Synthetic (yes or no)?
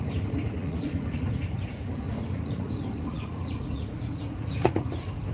yes